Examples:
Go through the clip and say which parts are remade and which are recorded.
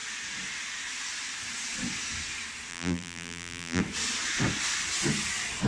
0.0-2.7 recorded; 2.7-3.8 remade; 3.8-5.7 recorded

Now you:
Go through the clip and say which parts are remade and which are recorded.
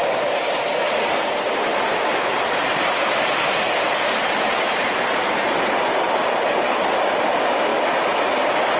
0.0-1.6 recorded; 1.6-7.7 remade; 7.7-8.8 recorded